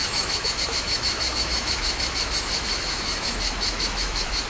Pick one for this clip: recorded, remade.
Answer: remade